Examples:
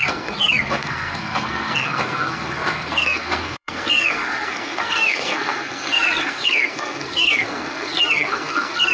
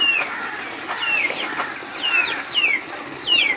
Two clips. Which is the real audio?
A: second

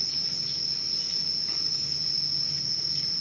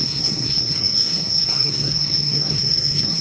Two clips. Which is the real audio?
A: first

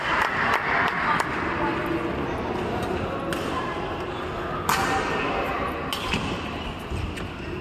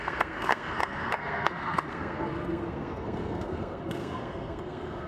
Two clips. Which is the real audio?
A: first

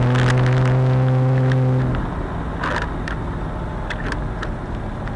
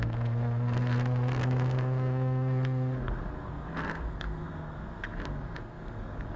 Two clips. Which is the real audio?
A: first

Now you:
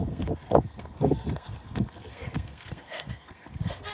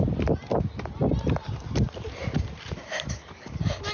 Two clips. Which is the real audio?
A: second